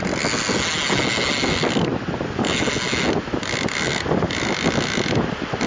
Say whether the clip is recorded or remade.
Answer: recorded